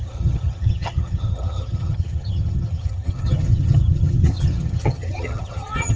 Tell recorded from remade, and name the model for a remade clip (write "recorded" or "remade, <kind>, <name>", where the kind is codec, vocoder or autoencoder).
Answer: remade, vocoder, HiFi-GAN